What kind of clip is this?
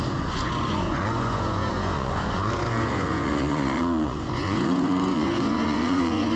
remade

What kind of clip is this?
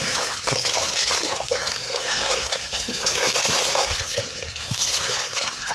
remade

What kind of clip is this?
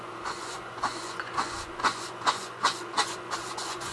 remade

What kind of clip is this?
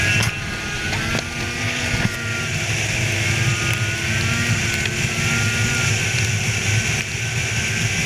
recorded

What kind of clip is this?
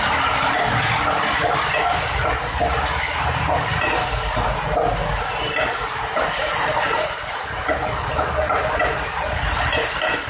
recorded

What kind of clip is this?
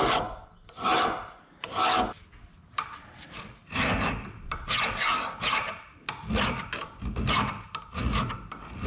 recorded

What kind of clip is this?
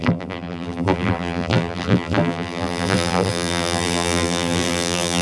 remade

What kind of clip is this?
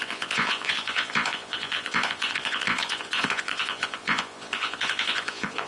remade